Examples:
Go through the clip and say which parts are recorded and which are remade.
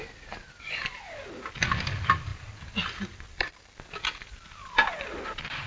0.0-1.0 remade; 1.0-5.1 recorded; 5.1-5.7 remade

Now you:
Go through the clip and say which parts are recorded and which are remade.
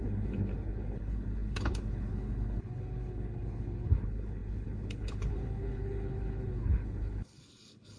0.0-8.0 remade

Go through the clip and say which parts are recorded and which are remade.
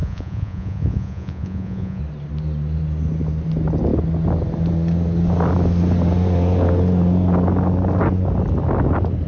0.0-2.0 remade; 2.0-9.3 recorded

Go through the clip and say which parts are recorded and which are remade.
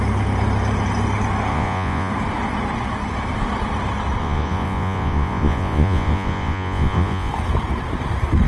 0.0-1.5 recorded; 1.5-2.1 remade; 2.1-4.2 recorded; 4.2-7.3 remade; 7.3-8.5 recorded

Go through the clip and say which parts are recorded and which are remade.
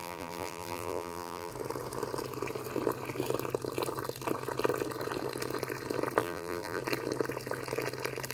0.0-1.5 remade; 1.5-6.2 recorded; 6.2-6.8 remade; 6.8-8.3 recorded